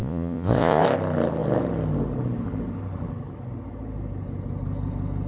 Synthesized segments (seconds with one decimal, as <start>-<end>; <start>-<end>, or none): 0.0-0.8